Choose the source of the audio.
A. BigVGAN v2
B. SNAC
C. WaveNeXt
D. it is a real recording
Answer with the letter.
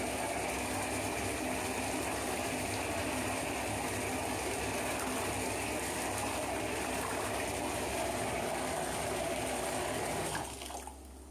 D